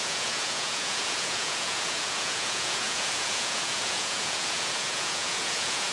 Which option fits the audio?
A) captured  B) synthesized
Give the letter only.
B